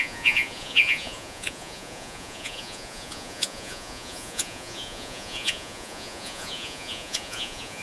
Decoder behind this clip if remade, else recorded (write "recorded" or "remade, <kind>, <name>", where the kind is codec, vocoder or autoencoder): remade, vocoder, Vocos